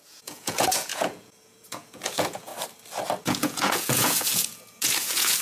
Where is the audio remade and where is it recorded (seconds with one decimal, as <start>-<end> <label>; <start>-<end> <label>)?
0.0-2.5 remade; 2.5-3.2 recorded; 3.2-5.4 remade